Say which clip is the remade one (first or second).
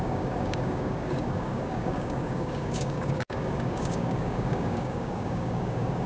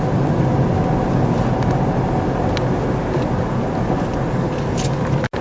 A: first